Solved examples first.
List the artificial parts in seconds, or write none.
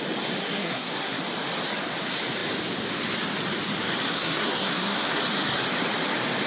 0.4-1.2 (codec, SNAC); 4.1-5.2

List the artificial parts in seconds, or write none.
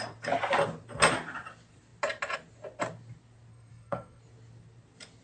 3.5-4.2 (codec, SNAC)